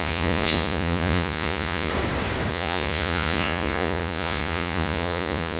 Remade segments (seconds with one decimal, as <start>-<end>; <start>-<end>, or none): 0.0-1.9; 2.5-5.6